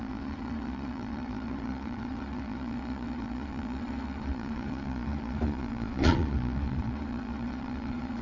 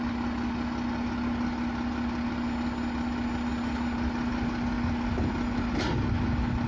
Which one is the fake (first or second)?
first